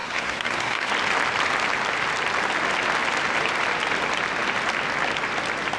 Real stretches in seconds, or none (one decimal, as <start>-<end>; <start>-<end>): 0.9-5.8